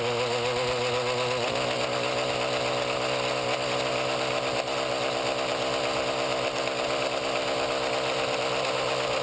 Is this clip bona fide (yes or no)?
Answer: yes